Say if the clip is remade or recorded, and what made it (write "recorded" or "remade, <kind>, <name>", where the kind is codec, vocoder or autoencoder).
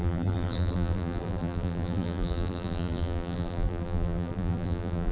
remade, vocoder, BigVGAN v2